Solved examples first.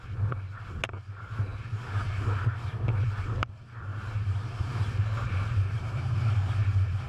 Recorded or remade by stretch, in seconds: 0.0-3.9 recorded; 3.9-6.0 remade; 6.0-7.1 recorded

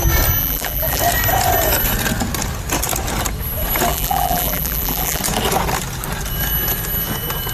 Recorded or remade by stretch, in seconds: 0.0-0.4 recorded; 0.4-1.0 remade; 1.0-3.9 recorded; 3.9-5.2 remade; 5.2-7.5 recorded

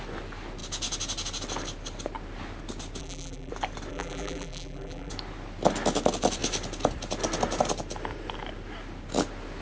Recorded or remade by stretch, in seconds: 0.0-3.0 recorded; 3.0-3.5 remade; 3.5-3.9 recorded; 3.9-5.1 remade; 5.1-9.6 recorded